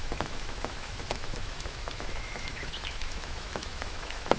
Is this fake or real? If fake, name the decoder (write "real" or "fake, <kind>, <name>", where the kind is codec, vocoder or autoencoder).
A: fake, autoencoder, DAC-VAE